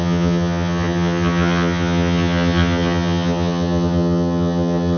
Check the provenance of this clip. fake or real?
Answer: fake